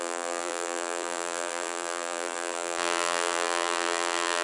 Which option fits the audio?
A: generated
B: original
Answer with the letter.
A